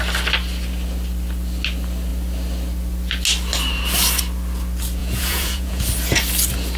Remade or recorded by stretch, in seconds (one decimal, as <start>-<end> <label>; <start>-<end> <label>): 0.0-5.0 recorded; 5.0-5.8 remade; 5.8-6.8 recorded